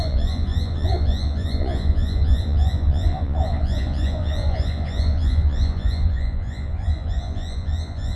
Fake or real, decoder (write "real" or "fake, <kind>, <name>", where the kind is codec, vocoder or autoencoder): fake, vocoder, Vocos